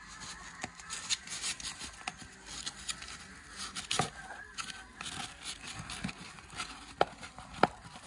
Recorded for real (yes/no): yes